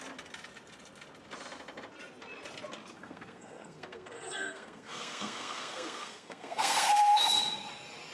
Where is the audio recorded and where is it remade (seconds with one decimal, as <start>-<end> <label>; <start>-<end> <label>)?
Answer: 0.0-3.0 recorded; 3.0-7.2 remade; 7.2-8.1 recorded